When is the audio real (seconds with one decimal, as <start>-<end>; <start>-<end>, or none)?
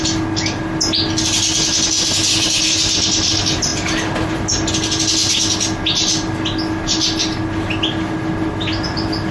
0.0-9.3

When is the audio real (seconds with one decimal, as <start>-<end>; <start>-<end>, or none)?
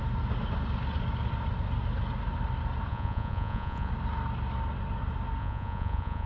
0.0-2.9; 3.9-5.4